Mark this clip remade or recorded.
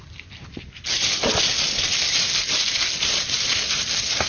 recorded